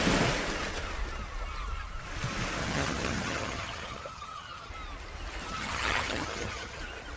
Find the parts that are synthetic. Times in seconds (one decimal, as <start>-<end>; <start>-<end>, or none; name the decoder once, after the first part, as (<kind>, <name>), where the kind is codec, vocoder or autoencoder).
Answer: 2.6-4.7 (vocoder, HiFi-GAN); 5.5-6.8